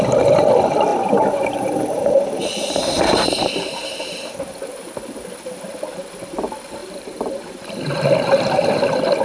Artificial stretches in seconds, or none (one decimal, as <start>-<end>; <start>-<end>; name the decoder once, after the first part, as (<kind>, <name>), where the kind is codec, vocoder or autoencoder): 0.9-4.5 (vocoder, BigVGAN v2); 6.8-7.6